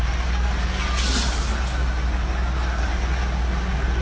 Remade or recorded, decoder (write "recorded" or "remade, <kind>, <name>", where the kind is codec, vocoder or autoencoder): recorded